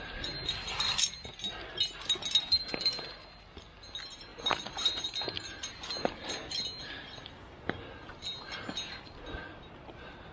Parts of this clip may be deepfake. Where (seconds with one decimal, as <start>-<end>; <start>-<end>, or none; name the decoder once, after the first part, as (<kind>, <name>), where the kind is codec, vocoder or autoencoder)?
4.3-5.1 (vocoder, BigVGAN v2)